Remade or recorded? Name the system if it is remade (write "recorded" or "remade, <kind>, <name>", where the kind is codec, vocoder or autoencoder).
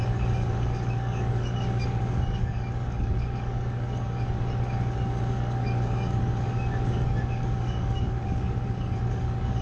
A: remade, codec, DAC